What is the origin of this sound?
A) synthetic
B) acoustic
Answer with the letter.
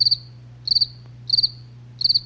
B